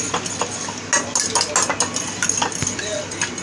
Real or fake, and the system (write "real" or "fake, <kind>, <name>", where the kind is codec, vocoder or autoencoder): real